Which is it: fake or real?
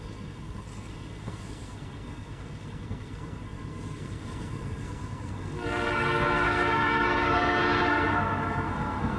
fake